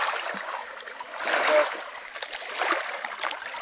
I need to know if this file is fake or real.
real